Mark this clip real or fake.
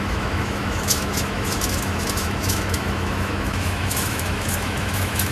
fake